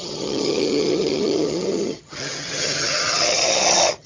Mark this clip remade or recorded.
remade